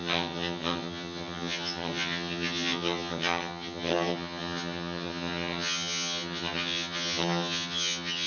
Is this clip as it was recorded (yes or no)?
no